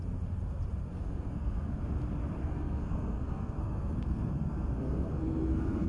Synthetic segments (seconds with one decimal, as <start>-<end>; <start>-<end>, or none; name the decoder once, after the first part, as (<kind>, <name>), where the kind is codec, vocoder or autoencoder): 0.8-1.8 (codec, SNAC); 2.4-5.9